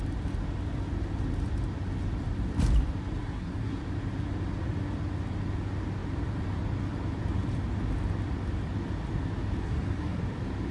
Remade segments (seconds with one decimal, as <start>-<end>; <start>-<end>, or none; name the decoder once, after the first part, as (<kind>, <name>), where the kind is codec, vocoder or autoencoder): 3.2-3.8 (codec, SNAC); 9.6-10.2